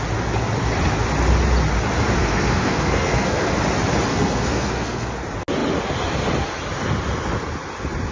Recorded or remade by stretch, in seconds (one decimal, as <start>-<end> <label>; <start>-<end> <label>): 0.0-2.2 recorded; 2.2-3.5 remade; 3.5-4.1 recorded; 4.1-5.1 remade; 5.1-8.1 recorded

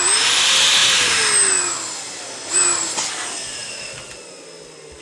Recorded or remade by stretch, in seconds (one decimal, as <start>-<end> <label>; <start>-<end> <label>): 0.0-5.0 recorded

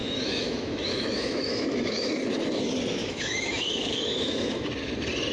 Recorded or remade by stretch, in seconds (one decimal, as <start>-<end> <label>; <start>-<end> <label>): 0.0-2.1 remade; 2.1-3.0 recorded; 3.0-4.7 remade; 4.7-5.3 recorded